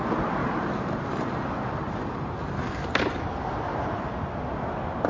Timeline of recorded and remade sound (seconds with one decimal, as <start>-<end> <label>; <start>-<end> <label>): 0.0-0.4 recorded; 0.4-2.9 remade; 2.9-5.1 recorded

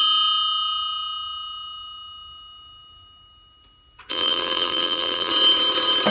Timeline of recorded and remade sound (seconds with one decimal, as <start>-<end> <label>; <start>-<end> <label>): 0.0-4.1 recorded; 4.1-5.3 remade; 5.3-6.1 recorded

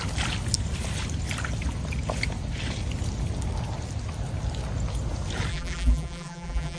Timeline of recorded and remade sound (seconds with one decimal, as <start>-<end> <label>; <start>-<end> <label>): 0.0-5.5 recorded; 5.5-6.8 remade

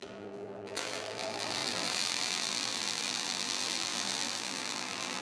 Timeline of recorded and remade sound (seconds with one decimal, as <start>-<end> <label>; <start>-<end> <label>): 0.0-5.2 remade

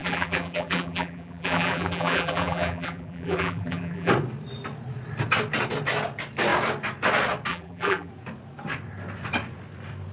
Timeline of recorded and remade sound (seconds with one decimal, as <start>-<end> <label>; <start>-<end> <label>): 0.0-4.1 remade; 4.1-7.5 recorded; 7.5-8.1 remade; 8.1-10.1 recorded

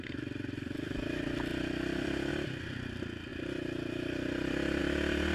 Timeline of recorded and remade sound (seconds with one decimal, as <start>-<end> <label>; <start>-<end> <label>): 0.0-5.3 remade

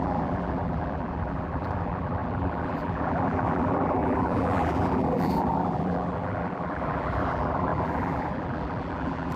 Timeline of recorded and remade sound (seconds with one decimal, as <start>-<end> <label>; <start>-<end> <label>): 0.0-9.4 remade